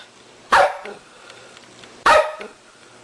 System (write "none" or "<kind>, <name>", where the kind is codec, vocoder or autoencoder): vocoder, BigVGAN v2